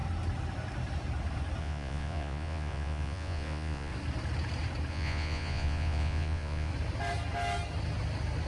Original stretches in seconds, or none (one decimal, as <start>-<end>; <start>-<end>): 0.0-1.6; 3.9-4.9; 6.7-8.5